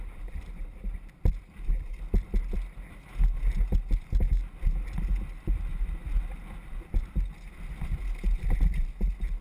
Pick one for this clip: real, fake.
real